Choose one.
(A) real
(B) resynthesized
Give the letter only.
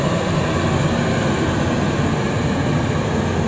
A